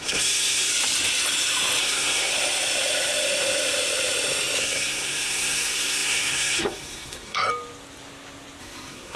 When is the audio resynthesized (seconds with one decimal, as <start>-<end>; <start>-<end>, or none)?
0.0-0.7; 1.8-2.3; 4.6-7.5; 8.6-9.2